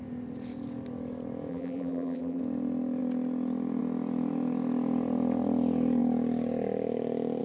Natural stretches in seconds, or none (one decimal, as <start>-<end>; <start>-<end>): 0.0-1.5; 2.4-7.4